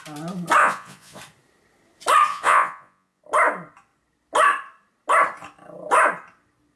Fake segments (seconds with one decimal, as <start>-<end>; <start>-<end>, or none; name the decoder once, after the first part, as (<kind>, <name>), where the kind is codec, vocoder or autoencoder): 0.6-1.2 (vocoder, Vocos); 2.3-3.2